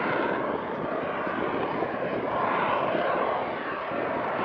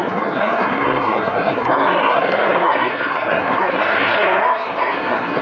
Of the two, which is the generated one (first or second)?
second